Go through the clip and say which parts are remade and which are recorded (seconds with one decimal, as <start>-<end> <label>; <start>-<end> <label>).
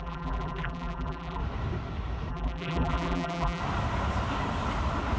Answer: 0.0-1.4 remade; 1.4-2.3 recorded; 2.3-3.6 remade; 3.6-5.2 recorded